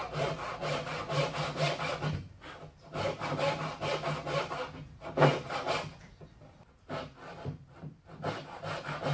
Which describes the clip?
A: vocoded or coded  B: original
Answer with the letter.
B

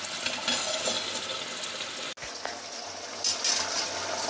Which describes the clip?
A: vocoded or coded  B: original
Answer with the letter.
B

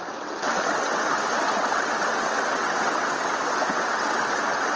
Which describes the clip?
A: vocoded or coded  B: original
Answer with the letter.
A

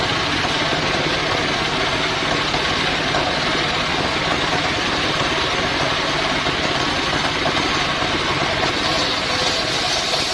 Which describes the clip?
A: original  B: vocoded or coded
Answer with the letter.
A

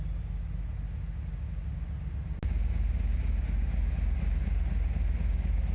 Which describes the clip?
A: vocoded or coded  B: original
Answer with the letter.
B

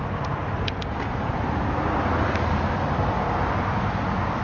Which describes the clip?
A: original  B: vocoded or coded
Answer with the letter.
A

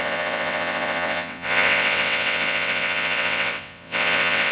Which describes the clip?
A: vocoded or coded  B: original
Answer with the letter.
A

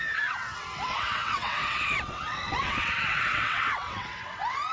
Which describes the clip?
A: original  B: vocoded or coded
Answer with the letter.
B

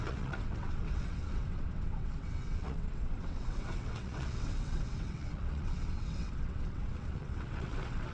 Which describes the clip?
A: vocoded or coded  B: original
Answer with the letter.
A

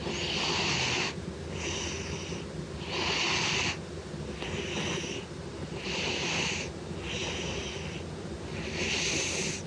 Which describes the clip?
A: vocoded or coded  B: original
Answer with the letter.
B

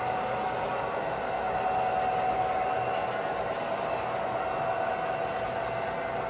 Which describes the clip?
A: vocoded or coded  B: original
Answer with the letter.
B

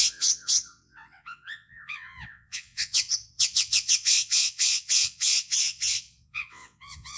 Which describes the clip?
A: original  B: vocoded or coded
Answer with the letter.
B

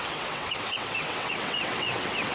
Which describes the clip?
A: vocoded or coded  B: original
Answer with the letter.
A